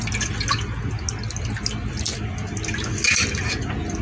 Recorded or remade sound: recorded